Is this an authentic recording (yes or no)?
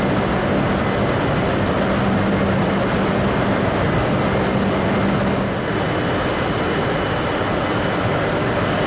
yes